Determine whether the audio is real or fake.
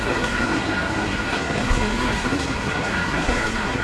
fake